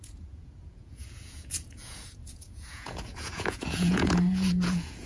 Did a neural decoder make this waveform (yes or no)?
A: yes